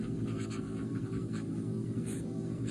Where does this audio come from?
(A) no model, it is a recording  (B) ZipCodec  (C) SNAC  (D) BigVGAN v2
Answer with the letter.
C